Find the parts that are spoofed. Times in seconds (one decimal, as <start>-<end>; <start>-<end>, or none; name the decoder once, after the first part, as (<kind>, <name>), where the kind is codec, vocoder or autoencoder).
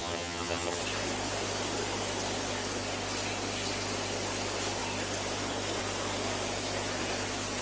0.0-0.8 (vocoder, HiFi-GAN)